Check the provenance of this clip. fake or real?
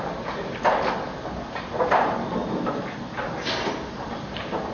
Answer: real